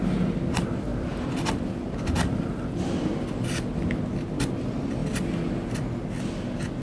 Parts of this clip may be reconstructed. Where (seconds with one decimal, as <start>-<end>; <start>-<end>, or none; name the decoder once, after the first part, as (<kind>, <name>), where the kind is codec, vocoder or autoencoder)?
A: none